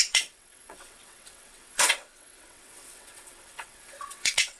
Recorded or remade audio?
remade